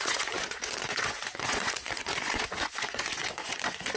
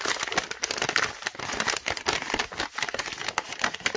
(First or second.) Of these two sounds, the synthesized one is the first